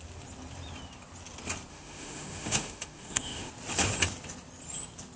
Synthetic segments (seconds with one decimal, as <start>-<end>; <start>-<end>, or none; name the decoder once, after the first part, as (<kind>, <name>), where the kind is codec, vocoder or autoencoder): 1.7-3.5 (autoencoder, DAC-VAE)